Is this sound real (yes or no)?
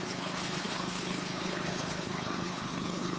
no